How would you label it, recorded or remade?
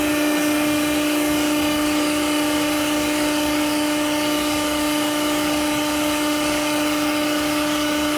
remade